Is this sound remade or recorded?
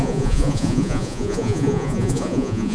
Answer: remade